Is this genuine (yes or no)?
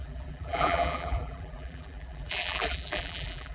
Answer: no